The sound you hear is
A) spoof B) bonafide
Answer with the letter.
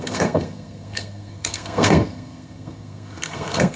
A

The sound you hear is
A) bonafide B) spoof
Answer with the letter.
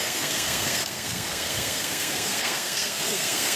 B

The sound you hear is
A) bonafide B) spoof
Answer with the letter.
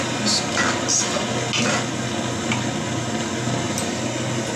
A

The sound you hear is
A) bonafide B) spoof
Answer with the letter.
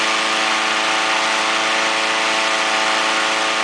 A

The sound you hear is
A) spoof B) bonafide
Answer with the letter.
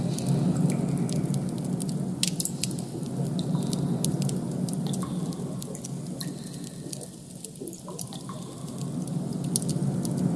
B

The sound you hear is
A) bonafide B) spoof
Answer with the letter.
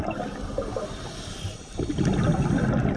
A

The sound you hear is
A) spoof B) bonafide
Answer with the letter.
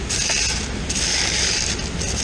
B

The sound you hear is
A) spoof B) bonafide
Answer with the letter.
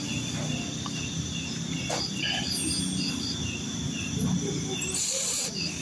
B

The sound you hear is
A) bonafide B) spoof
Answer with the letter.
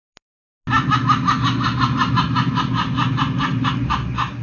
A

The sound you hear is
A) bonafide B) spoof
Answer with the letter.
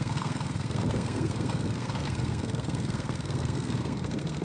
B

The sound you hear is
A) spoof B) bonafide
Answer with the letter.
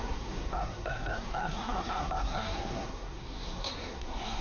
A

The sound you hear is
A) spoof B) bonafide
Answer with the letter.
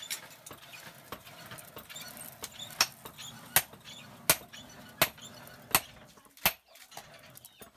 B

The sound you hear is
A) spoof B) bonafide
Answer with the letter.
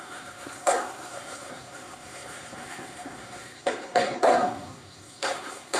A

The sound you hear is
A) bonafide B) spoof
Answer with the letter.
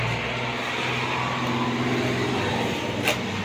A